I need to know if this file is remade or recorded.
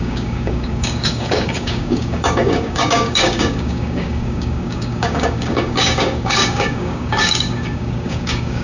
remade